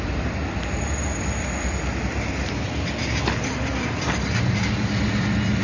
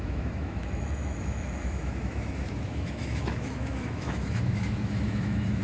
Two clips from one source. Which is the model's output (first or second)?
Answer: second